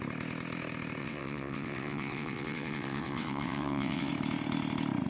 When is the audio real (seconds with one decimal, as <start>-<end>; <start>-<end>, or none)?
0.0-1.0; 4.1-5.1